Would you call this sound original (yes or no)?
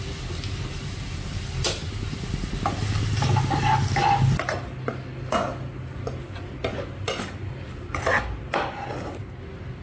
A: yes